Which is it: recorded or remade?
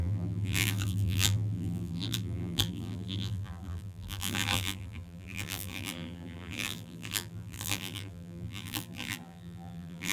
remade